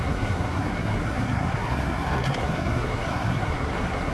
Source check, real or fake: fake